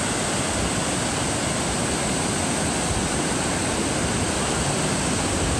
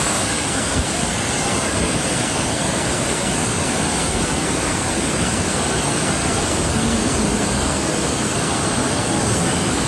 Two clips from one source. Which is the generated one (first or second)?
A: second